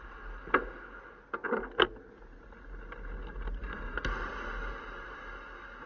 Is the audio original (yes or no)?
yes